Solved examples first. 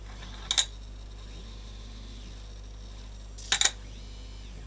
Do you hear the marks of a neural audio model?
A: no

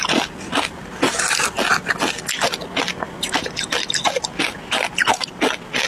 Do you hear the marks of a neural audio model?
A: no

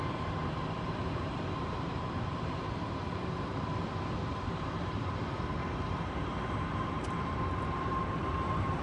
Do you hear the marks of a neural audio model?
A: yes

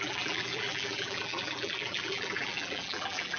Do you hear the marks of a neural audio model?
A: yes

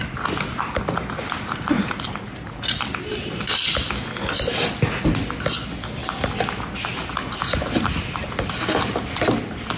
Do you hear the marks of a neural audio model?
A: no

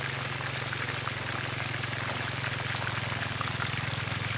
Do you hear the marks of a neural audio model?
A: no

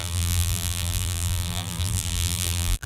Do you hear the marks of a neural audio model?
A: yes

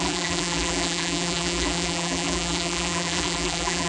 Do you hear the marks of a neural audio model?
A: yes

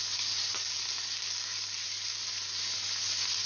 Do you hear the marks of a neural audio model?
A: no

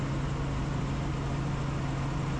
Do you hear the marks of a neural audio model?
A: no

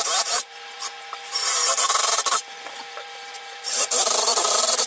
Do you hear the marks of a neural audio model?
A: yes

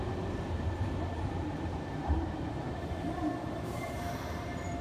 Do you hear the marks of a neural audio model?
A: yes